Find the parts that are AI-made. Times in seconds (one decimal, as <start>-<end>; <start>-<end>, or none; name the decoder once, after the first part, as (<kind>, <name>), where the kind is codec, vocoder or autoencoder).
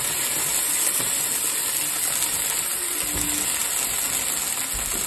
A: none